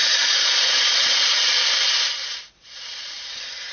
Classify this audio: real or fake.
fake